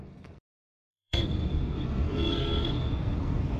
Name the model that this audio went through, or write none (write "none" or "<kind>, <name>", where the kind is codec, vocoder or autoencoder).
codec, SNAC